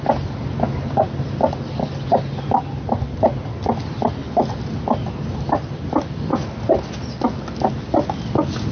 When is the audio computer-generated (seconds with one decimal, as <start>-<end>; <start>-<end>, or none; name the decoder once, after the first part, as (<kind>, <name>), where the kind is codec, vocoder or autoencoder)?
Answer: none